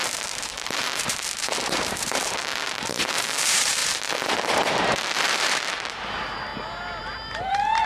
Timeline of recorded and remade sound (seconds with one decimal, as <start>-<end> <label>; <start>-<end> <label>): 0.0-6.5 remade; 6.5-7.0 recorded; 7.0-7.9 remade